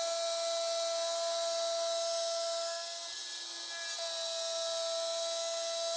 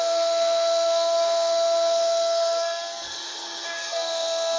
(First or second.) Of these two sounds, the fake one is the second